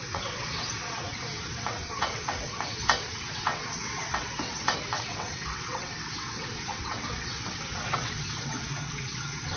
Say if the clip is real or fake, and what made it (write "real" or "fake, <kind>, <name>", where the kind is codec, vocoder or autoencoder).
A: fake, vocoder, WaveNeXt